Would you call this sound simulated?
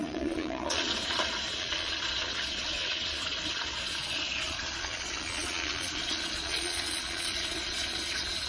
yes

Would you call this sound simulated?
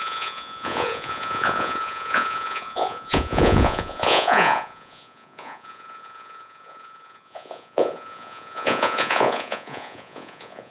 yes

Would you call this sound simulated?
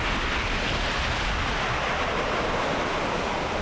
no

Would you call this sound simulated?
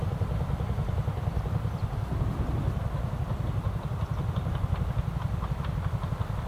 no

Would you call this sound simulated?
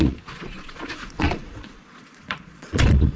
yes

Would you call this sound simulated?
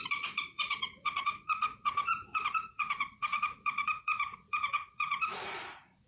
yes